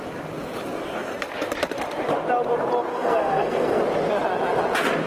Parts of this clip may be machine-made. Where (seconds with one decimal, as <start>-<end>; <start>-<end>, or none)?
2.9-3.8